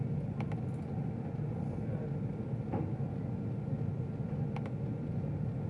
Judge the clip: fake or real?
real